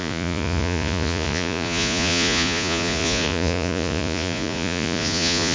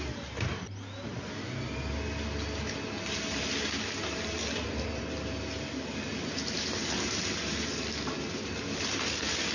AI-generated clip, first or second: first